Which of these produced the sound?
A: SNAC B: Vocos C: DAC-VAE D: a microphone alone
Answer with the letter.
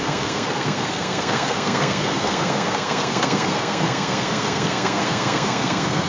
A